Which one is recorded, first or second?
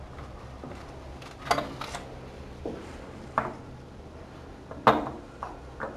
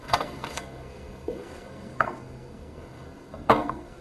first